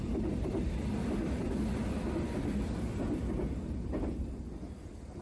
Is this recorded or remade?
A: recorded